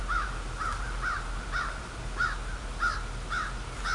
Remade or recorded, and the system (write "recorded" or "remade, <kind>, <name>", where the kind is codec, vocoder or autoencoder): recorded